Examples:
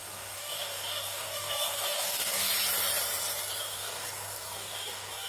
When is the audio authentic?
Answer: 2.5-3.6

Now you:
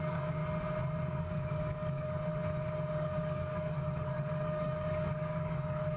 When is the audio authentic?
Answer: 0.4-1.1; 2.3-2.9

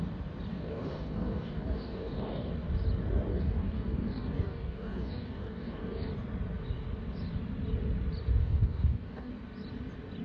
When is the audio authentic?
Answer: 0.0-0.5; 2.5-3.3; 6.1-8.4; 9.3-10.2

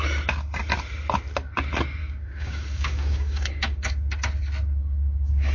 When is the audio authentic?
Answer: 0.0-2.0; 3.9-4.8

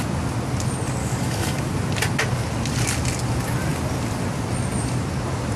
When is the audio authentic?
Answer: 0.0-1.0; 1.6-5.6

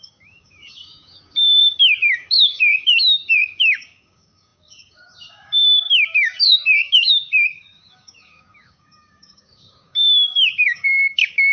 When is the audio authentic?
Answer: none

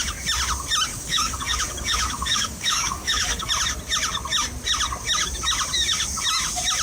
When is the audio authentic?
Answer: 0.0-0.9; 3.5-6.8

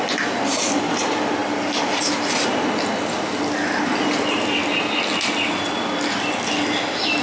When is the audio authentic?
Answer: 0.0-7.2